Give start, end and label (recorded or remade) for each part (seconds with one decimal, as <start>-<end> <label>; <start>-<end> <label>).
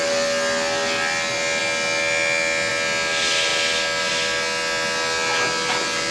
0.0-6.1 recorded